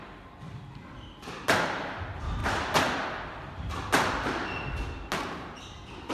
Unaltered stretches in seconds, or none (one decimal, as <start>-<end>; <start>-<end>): 0.0-6.1